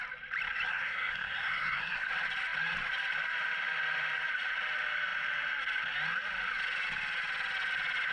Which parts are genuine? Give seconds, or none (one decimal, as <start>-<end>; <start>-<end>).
0.0-0.7; 2.1-8.1